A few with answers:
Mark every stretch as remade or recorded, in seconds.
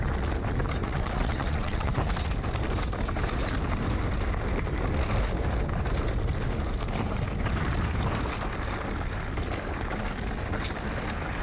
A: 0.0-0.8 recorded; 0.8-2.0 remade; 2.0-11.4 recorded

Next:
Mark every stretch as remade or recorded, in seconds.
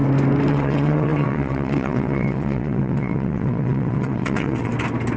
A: 0.0-0.5 recorded; 0.5-4.7 remade; 4.7-5.2 recorded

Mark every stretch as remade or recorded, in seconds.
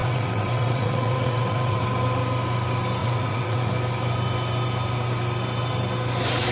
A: 0.0-1.8 remade; 1.8-3.0 recorded; 3.0-3.7 remade; 3.7-6.5 recorded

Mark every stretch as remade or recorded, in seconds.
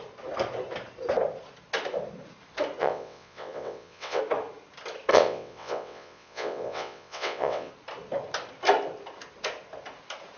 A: 0.0-2.8 recorded; 2.8-4.2 remade; 4.2-5.1 recorded; 5.1-7.7 remade; 7.7-10.4 recorded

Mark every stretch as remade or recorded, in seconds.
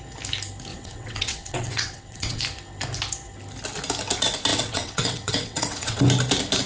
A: 0.0-0.7 recorded; 0.7-2.4 remade; 2.4-4.5 recorded; 4.5-6.0 remade; 6.0-6.7 recorded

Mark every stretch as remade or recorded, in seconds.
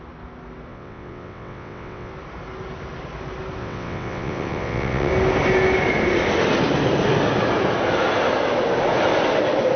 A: 0.0-0.7 recorded; 0.7-2.1 remade; 2.1-3.6 recorded; 3.6-5.1 remade; 5.1-9.8 recorded